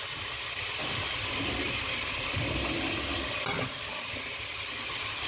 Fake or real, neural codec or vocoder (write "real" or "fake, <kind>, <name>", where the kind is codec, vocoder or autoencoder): real